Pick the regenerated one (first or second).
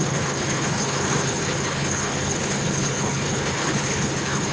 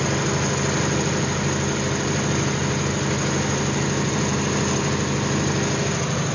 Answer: first